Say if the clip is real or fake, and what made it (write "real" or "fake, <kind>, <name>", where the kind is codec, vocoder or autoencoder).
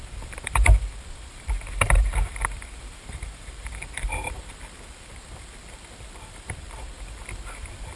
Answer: fake, vocoder, BigVGAN v2